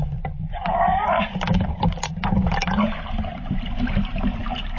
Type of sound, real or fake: fake